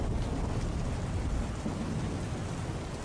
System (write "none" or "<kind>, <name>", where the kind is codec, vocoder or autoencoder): none